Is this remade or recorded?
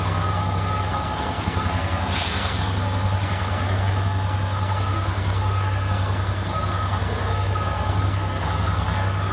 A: remade